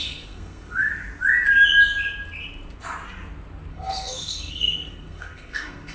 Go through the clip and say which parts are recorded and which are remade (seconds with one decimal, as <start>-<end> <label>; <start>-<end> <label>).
0.0-0.9 remade; 0.9-3.7 recorded; 3.7-5.9 remade